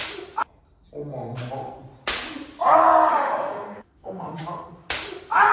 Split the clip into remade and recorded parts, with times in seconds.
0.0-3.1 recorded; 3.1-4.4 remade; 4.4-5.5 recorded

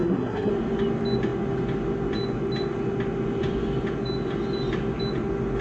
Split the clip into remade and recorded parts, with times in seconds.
0.0-0.5 remade; 0.5-5.6 recorded

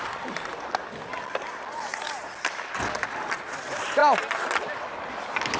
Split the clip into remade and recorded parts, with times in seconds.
0.0-5.6 recorded

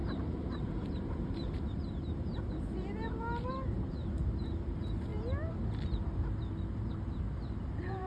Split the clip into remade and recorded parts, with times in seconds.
0.0-5.1 remade; 5.1-7.2 recorded; 7.2-8.1 remade

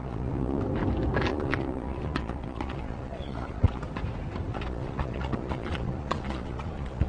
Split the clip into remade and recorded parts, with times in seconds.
0.0-0.6 remade; 0.6-1.3 recorded; 1.3-3.8 remade; 3.8-4.5 recorded; 4.5-7.1 remade